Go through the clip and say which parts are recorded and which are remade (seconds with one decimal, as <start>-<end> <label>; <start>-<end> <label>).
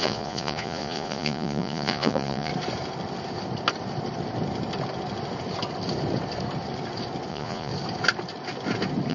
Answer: 0.0-2.5 remade; 2.5-7.3 recorded; 7.3-7.7 remade; 7.7-9.1 recorded